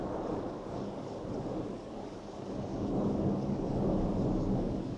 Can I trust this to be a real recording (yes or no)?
no